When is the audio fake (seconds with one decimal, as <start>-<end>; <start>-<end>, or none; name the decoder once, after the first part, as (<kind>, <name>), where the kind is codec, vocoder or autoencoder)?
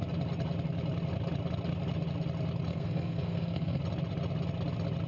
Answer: 2.7-3.8 (codec, SNAC)